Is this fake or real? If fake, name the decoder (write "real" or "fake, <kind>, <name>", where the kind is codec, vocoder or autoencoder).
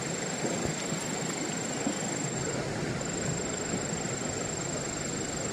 real